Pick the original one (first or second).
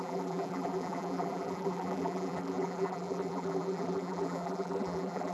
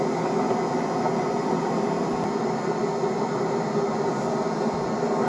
second